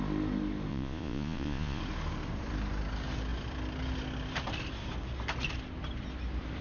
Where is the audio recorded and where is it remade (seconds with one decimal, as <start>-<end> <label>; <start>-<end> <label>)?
0.0-0.7 recorded; 0.7-1.8 remade; 1.8-6.6 recorded